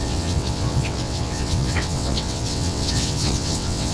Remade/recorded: remade